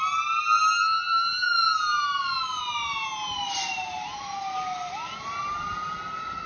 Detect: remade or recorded recorded